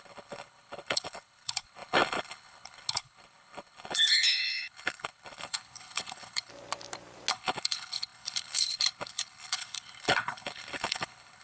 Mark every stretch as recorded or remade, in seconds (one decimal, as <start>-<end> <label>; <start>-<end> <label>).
0.0-6.5 remade; 6.5-7.3 recorded; 7.3-11.4 remade